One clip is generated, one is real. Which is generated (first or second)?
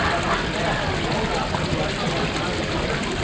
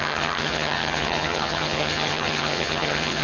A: second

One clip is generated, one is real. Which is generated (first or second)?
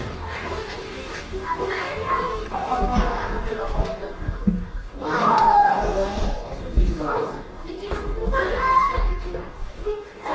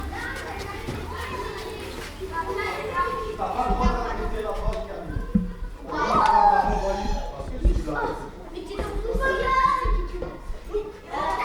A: first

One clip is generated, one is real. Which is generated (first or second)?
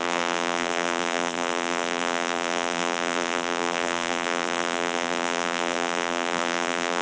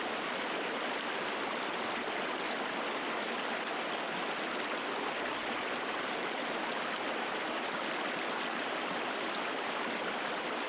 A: first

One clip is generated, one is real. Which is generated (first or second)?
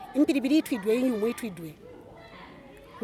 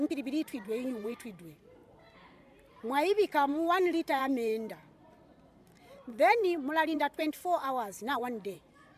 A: second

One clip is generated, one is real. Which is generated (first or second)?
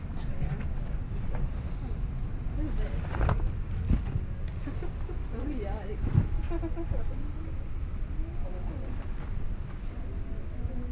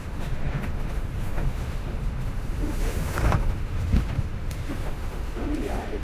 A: second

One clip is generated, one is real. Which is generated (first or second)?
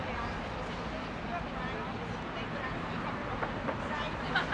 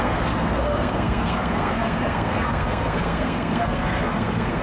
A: second